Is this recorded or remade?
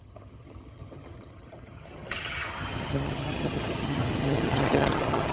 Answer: remade